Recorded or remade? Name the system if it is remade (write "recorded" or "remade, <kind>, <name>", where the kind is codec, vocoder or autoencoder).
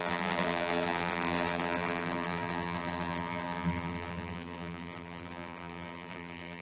remade, vocoder, BigVGAN v2